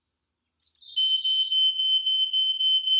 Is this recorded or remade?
recorded